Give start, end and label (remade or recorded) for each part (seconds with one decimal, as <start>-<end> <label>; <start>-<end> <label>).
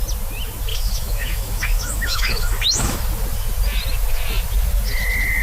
0.0-0.7 recorded; 0.7-3.0 remade; 3.0-5.4 recorded